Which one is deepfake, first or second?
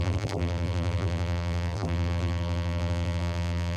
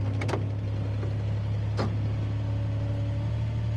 first